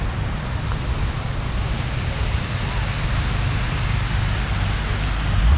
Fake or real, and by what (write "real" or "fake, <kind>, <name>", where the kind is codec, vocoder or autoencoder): real